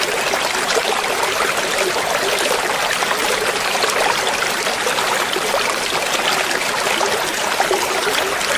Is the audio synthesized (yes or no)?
yes